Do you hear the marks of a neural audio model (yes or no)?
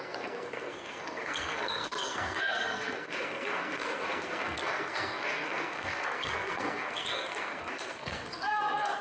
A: yes